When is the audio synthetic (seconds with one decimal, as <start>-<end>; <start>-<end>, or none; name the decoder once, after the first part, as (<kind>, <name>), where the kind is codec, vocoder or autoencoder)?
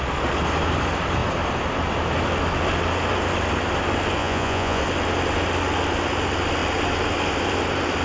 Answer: 4.2-4.8 (vocoder, Vocos)